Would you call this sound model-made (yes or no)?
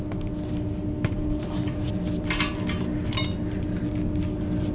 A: no